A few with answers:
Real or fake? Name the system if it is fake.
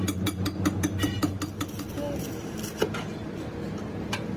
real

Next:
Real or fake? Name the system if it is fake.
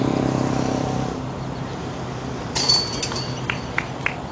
real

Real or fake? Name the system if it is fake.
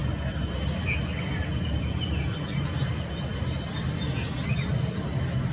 real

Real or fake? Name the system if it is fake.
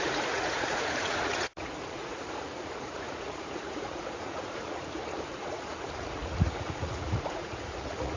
fake, vocoder, Vocos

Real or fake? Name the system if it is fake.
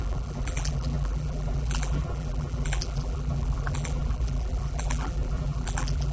fake, vocoder, BigVGAN v2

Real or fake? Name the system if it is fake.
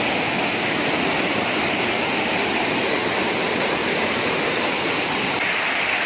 real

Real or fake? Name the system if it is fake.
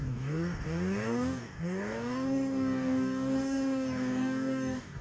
fake, codec, DAC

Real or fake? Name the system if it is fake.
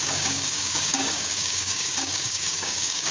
fake, codec, DAC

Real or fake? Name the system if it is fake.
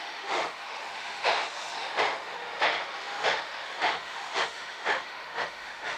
fake, autoencoder, DAC-VAE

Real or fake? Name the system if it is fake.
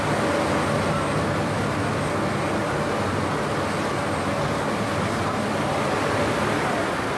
real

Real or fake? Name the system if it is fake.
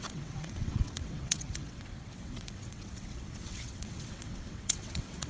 fake, vocoder, WaveNeXt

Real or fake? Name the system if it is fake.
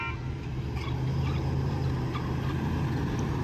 real